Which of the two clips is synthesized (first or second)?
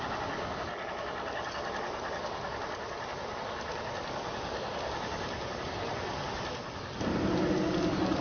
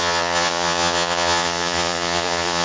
second